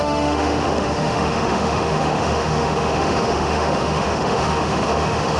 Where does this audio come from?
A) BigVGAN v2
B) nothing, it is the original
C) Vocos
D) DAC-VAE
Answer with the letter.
D